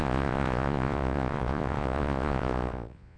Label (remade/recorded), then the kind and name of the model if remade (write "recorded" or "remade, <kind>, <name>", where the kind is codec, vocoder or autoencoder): remade, vocoder, Vocos